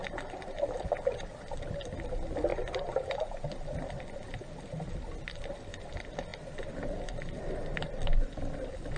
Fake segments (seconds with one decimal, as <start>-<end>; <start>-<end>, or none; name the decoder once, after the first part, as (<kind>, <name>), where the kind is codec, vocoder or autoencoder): 0.0-9.0 (vocoder, BigVGAN v2)